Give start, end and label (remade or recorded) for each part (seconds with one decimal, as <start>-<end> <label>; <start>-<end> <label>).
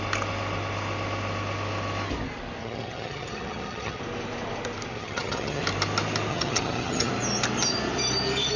0.0-2.6 recorded; 2.6-4.0 remade; 4.0-4.9 recorded; 4.9-5.6 remade; 5.6-6.3 recorded; 6.3-7.1 remade; 7.1-8.6 recorded